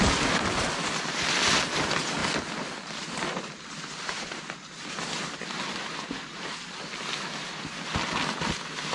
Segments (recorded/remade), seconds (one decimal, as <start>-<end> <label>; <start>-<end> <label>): 0.0-8.9 recorded